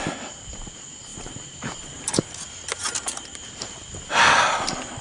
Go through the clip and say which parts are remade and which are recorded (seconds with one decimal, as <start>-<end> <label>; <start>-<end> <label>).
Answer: 0.0-1.1 recorded; 1.1-4.1 remade; 4.1-5.0 recorded